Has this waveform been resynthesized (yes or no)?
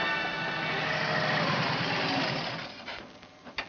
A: no